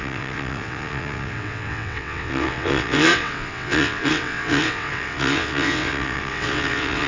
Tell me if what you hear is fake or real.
fake